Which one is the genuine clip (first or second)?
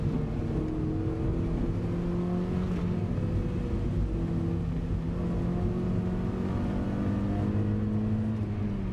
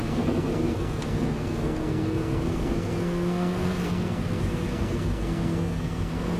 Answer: first